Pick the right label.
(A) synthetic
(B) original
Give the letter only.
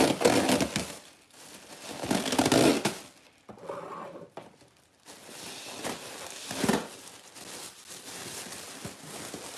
B